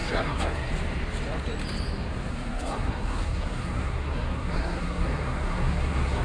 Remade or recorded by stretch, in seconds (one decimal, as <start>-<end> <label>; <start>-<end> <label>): 0.0-0.7 remade; 0.7-2.3 recorded; 2.3-6.2 remade